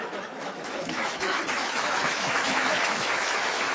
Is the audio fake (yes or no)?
yes